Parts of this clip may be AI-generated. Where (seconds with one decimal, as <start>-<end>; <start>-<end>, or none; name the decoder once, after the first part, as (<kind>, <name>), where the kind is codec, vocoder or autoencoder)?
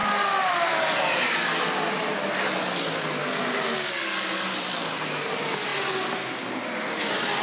3.2-3.9 (codec, DAC)